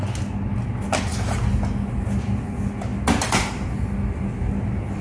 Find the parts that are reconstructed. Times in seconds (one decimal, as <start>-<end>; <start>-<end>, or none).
none

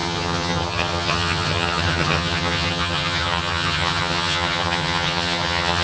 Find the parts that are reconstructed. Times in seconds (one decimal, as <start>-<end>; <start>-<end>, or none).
0.0-5.8

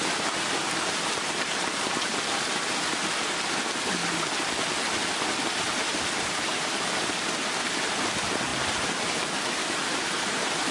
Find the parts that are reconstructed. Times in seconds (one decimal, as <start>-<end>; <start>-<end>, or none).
none

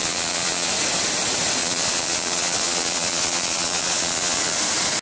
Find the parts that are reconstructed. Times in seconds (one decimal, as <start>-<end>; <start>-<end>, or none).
0.0-0.7; 1.6-4.6

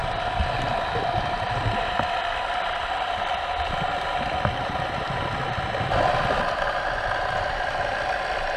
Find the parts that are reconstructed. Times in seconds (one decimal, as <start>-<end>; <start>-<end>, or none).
1.2-8.6

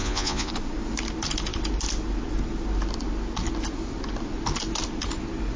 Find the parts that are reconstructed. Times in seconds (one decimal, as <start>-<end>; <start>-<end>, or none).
0.0-0.5